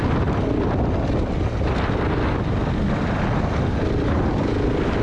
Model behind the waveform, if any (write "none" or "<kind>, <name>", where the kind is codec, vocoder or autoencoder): none